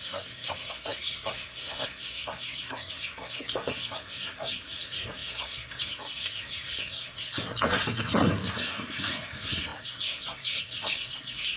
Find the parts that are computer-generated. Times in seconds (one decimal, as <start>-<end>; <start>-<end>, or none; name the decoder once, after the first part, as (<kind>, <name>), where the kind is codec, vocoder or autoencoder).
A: 0.0-11.6 (codec, SNAC)